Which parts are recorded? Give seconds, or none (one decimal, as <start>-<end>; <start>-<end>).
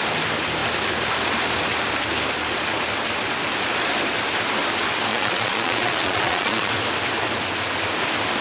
0.0-5.1; 6.7-8.4